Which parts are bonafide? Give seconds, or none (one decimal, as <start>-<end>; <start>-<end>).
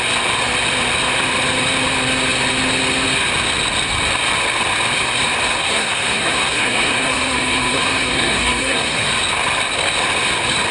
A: 0.0-5.6; 9.1-10.7